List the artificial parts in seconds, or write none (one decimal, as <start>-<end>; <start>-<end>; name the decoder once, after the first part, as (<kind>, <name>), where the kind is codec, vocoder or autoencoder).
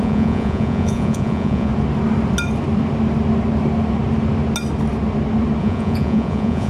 0.0-1.7 (vocoder, Vocos); 5.6-6.7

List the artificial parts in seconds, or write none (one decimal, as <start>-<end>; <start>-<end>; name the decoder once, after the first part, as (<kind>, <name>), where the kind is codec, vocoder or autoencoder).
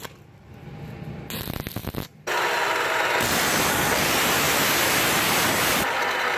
none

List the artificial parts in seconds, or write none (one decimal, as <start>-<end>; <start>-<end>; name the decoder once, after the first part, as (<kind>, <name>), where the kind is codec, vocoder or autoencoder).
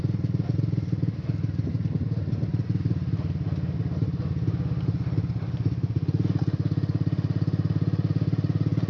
none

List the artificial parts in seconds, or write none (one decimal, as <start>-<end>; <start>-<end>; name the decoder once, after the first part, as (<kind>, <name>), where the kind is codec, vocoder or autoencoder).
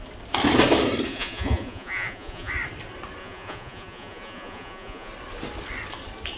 1.1-2.5 (vocoder, Vocos); 3.2-5.1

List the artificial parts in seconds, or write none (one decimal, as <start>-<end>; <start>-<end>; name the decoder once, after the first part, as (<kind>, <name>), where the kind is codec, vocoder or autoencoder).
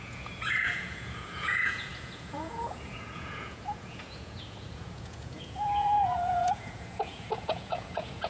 0.0-8.3 (vocoder, Vocos)